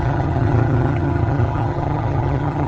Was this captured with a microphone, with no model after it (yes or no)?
no